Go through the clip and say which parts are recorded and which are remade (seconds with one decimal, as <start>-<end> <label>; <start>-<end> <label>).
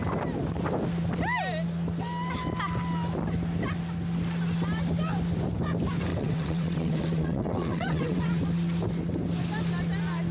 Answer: 0.0-6.1 recorded; 6.1-8.4 remade; 8.4-10.3 recorded